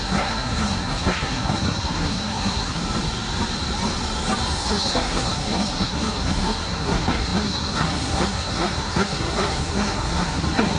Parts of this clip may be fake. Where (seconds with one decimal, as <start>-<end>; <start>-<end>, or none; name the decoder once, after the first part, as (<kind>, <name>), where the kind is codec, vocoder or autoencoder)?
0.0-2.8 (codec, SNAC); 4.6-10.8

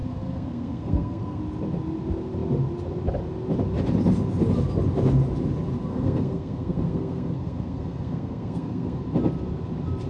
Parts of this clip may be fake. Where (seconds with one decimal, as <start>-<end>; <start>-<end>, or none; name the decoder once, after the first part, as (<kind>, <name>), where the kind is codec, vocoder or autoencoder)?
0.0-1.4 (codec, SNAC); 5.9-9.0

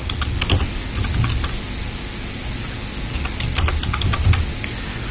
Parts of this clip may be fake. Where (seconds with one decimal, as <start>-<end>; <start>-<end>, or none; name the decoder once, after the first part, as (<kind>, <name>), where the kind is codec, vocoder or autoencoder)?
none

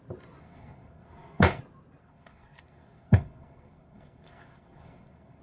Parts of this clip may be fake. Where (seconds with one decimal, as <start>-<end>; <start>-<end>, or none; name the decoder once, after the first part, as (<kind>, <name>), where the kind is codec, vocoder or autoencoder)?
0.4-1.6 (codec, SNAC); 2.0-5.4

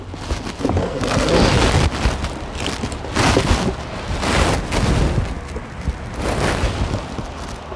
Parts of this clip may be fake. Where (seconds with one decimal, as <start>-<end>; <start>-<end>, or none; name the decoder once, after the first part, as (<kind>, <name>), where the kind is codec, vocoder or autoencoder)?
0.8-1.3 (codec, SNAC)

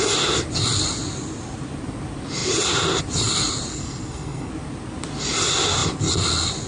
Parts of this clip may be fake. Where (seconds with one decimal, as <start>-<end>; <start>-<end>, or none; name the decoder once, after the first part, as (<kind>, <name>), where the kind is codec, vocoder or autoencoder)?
3.7-4.5 (codec, SNAC)

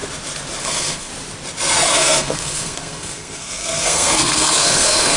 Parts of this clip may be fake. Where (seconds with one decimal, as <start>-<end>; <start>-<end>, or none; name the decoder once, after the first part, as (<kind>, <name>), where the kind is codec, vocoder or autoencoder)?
0.6-1.1 (codec, SNAC); 1.9-5.2